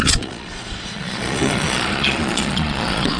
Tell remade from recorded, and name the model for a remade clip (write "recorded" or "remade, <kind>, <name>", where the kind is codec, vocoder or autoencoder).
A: remade, vocoder, Vocos